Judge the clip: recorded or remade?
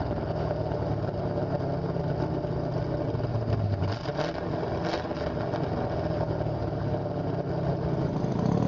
recorded